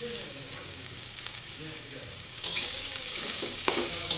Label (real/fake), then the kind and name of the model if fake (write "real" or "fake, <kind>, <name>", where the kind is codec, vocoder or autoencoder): fake, codec, DAC